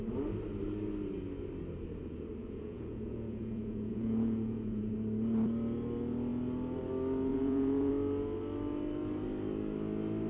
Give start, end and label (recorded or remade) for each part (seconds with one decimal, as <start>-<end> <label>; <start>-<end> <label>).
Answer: 0.0-2.4 recorded; 2.4-4.9 remade; 4.9-7.3 recorded; 7.3-7.9 remade; 7.9-10.3 recorded